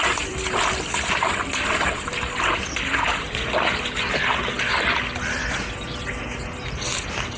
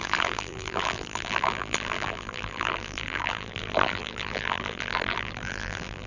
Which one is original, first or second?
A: first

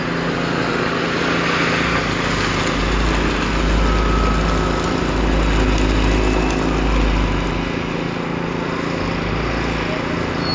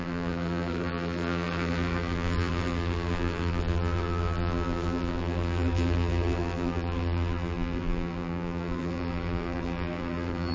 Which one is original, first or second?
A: first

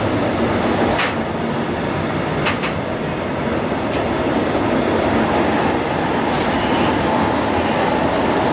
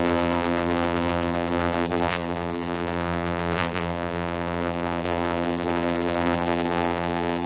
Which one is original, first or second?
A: first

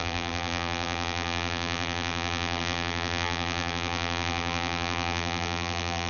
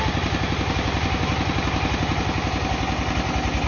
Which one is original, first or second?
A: second